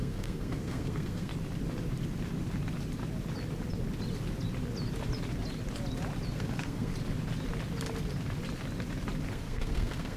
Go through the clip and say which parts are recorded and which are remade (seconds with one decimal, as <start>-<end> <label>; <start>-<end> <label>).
0.0-1.3 remade; 1.3-6.3 recorded; 6.3-6.9 remade; 6.9-9.3 recorded; 9.3-10.2 remade